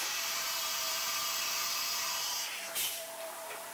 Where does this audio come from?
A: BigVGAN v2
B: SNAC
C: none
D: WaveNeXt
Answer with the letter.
A